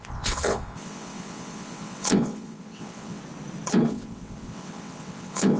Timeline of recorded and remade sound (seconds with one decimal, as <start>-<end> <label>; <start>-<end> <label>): 0.0-3.2 remade; 3.2-3.9 recorded; 3.9-5.6 remade